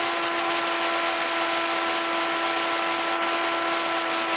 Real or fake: real